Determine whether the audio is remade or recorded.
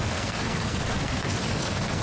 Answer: remade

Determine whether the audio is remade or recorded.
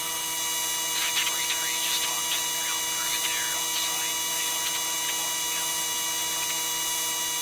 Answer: recorded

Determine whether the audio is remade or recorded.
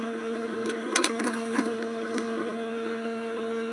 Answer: remade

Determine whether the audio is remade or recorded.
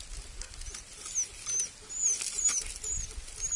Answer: recorded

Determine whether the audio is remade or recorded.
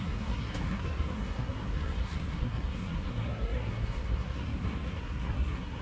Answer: remade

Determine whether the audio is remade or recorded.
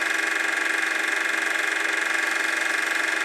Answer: recorded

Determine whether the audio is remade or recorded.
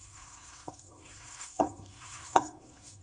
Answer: remade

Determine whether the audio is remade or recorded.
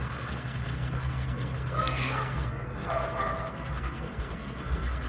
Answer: remade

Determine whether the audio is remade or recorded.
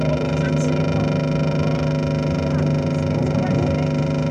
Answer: recorded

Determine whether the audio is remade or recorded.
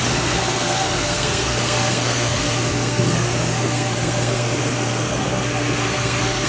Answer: remade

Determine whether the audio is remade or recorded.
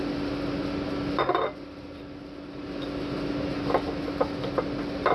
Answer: recorded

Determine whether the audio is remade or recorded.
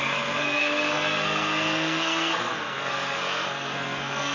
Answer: remade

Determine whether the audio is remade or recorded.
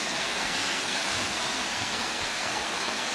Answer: remade